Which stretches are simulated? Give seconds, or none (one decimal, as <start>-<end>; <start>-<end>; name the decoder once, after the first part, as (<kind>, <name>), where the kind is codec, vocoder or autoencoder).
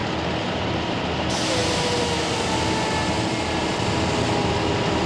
none